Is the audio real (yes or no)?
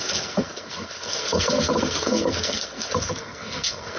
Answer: no